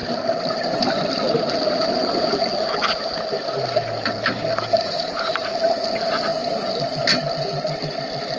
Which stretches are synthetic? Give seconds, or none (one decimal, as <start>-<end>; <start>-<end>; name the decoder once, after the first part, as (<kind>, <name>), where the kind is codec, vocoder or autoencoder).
none